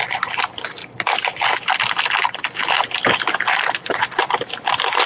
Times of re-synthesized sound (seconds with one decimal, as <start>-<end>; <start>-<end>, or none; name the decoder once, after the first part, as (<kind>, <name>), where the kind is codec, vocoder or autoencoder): 0.0-0.8 (vocoder, BigVGAN v2); 3.7-5.1